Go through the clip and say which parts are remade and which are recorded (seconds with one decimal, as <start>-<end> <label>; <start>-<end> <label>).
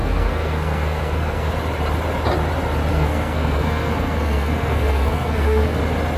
0.0-1.5 remade; 1.5-2.9 recorded; 2.9-5.8 remade; 5.8-6.2 recorded